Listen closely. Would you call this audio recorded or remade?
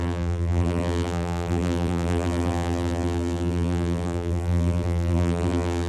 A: remade